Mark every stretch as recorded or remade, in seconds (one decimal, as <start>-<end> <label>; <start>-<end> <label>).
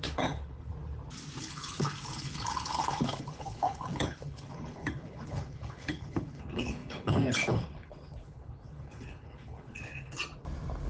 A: 0.0-0.7 remade; 0.7-1.4 recorded; 1.4-10.2 remade; 10.2-10.9 recorded